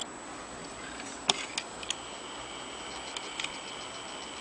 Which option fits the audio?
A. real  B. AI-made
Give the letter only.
A